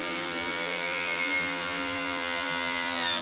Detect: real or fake fake